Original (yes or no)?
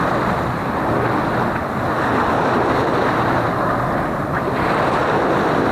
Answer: yes